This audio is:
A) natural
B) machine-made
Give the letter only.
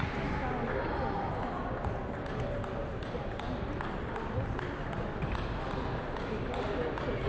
A